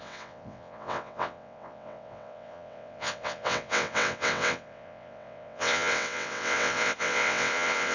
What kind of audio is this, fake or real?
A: fake